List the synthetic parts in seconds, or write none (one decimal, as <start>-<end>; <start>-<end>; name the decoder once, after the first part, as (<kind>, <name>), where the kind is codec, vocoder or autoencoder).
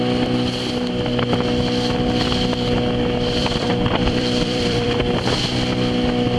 3.4-5.4 (vocoder, BigVGAN v2)